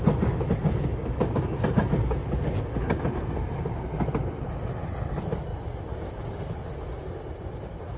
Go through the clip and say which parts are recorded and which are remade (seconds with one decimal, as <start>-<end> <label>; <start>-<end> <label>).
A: 0.0-8.0 recorded